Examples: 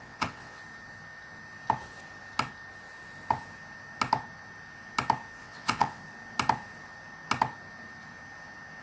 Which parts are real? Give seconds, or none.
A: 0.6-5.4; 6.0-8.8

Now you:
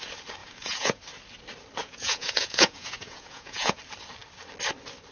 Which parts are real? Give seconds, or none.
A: 0.0-0.4; 1.0-1.8; 3.8-5.1

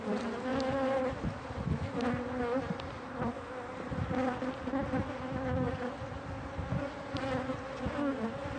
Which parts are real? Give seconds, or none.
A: 0.0-8.6

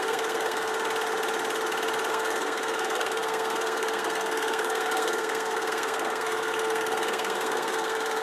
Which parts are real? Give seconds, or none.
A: 0.7-2.1

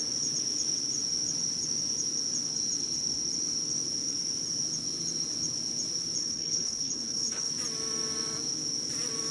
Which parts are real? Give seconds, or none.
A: 0.0-6.2; 7.5-9.3

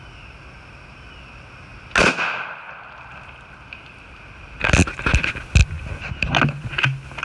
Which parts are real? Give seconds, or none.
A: 0.0-7.2